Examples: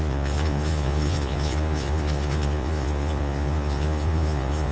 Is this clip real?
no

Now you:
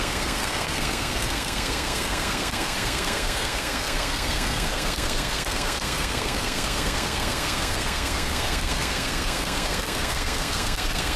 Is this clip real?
no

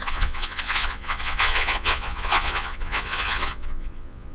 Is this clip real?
no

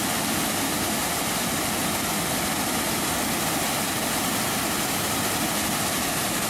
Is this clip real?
yes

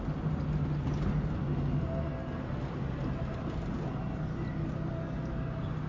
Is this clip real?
yes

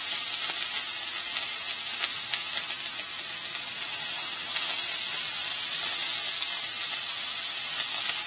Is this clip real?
yes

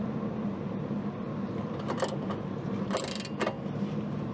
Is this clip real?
yes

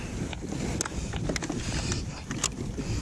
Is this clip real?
yes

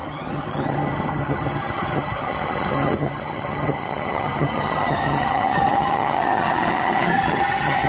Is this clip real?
no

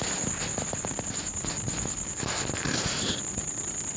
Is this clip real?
yes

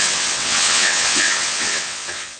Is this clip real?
no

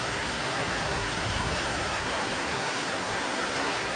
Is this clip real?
no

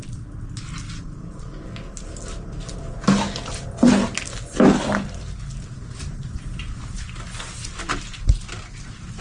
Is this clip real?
yes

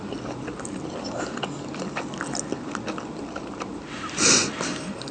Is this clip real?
yes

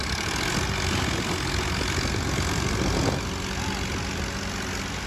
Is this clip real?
yes